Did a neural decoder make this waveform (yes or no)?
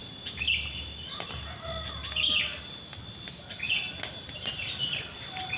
no